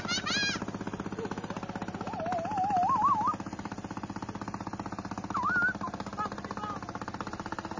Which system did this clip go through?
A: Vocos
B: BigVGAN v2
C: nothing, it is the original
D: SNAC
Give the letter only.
C